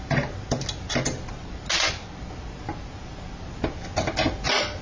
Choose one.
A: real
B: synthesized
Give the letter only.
A